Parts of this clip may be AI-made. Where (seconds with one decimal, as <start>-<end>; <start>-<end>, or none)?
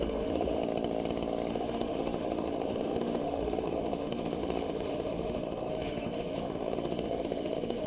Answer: 0.0-0.6; 1.5-7.9